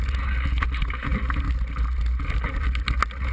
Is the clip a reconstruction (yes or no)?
no